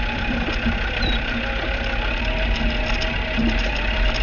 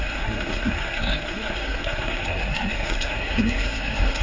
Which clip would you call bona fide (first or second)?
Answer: first